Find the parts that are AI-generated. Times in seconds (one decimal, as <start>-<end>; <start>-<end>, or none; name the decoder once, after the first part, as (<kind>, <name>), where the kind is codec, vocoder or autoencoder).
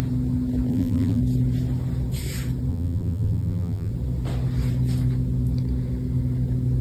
0.7-1.2 (vocoder, BigVGAN v2); 2.7-3.9